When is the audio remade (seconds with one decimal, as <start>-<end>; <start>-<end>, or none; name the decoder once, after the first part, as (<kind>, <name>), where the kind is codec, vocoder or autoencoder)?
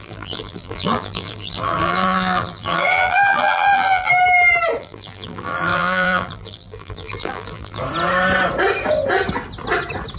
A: 0.0-4.1 (vocoder, BigVGAN v2); 4.8-7.8